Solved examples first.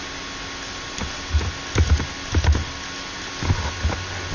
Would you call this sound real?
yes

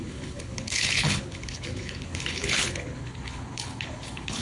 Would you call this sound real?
no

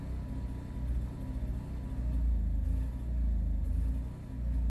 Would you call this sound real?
yes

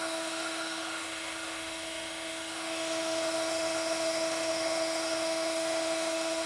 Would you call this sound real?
no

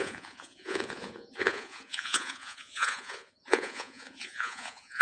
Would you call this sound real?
no